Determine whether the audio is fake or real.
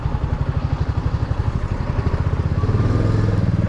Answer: real